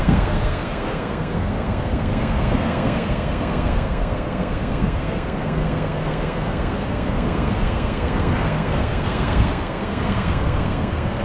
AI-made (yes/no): yes